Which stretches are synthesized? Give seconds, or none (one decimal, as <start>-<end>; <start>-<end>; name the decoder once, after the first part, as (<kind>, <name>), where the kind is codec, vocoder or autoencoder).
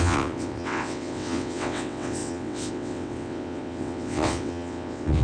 0.0-5.2 (vocoder, WaveNeXt)